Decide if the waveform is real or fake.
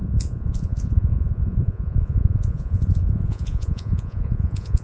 fake